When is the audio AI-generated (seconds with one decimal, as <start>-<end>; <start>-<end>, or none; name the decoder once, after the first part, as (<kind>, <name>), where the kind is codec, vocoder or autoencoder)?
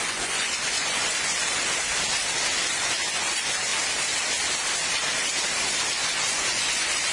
0.0-1.4 (vocoder, Vocos); 2.7-3.7; 5.9-7.1